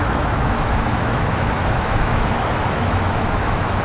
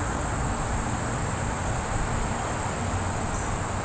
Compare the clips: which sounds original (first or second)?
second